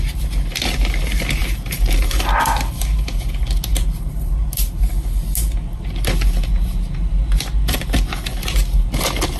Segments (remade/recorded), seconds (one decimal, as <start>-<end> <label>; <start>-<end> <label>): 0.0-1.4 recorded; 1.4-2.4 remade; 2.4-3.7 recorded; 3.7-4.8 remade; 4.8-9.4 recorded